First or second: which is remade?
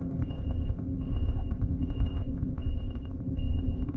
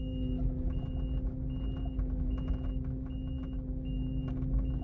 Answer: first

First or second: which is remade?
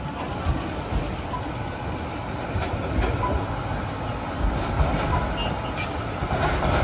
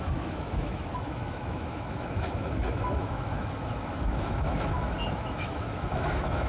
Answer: second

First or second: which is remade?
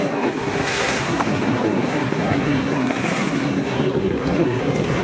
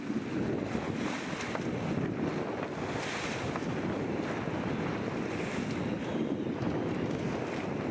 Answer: first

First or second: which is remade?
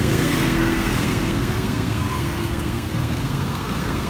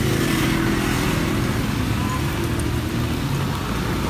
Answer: first